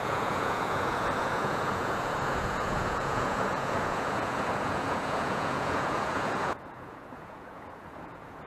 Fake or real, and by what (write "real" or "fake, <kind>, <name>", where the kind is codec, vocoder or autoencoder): fake, vocoder, Vocos